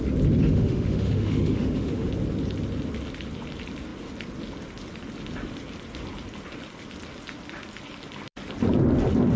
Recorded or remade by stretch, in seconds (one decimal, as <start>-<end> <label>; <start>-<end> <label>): 0.0-0.4 recorded; 0.4-2.1 remade; 2.1-9.4 recorded